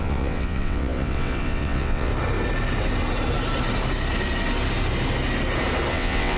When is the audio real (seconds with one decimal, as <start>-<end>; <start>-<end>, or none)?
2.1-5.9